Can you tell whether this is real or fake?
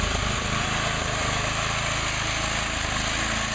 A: real